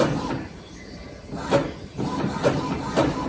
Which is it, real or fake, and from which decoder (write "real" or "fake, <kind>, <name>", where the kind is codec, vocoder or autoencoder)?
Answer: real